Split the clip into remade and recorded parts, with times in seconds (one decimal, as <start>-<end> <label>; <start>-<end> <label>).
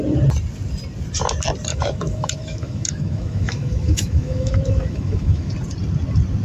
0.0-1.7 recorded; 1.7-5.5 remade; 5.5-6.4 recorded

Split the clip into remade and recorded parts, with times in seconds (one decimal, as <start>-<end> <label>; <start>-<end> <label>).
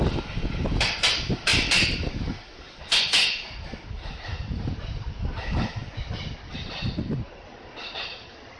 0.0-8.6 recorded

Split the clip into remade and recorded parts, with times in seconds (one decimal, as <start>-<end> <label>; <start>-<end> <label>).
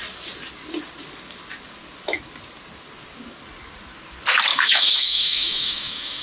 0.0-4.5 recorded; 4.5-6.2 remade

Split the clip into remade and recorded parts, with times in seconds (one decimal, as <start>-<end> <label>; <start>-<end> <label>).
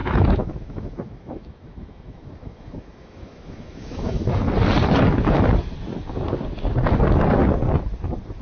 0.0-4.3 remade; 4.3-8.4 recorded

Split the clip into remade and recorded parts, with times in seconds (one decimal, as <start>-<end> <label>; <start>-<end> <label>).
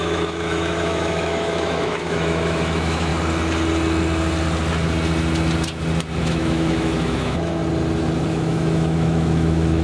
0.0-3.1 remade; 3.1-6.2 recorded; 6.2-7.6 remade; 7.6-8.3 recorded; 8.3-9.8 remade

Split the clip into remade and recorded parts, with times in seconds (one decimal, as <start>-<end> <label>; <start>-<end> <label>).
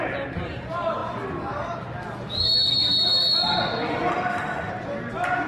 0.0-4.1 recorded; 4.1-4.7 remade; 4.7-5.5 recorded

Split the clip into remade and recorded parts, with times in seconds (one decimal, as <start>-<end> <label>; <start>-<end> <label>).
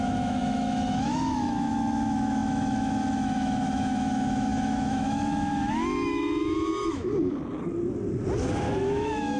0.0-7.1 remade; 7.1-8.8 recorded; 8.8-9.4 remade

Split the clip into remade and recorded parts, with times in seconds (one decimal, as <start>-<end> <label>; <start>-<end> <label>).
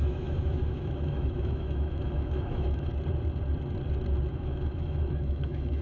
0.0-2.9 remade; 2.9-4.3 recorded; 4.3-5.8 remade